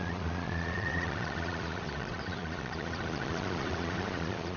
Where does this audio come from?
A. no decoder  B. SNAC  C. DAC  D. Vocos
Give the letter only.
D